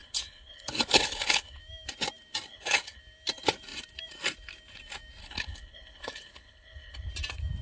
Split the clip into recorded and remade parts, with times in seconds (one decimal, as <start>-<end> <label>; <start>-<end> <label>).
0.0-1.6 remade; 1.6-2.5 recorded; 2.5-3.0 remade; 3.0-5.2 recorded; 5.2-7.1 remade; 7.1-7.6 recorded